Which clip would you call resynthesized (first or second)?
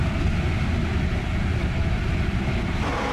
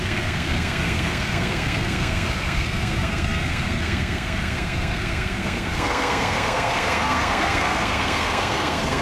second